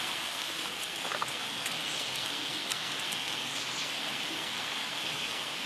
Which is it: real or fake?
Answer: fake